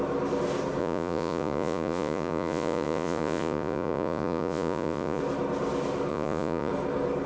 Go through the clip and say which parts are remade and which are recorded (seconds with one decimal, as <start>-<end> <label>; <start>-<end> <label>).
0.0-0.8 recorded; 0.8-5.2 remade; 5.2-6.1 recorded; 6.1-6.7 remade; 6.7-7.3 recorded